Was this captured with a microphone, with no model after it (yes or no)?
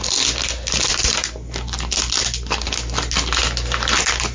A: yes